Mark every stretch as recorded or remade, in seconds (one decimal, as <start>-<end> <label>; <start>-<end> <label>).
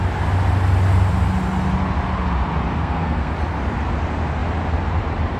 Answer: 0.0-2.7 recorded; 2.7-3.3 remade; 3.3-5.4 recorded